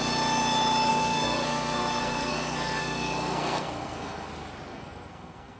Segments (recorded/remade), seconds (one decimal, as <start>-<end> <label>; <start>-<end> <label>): 0.0-0.9 recorded; 0.9-4.3 remade; 4.3-4.7 recorded; 4.7-5.6 remade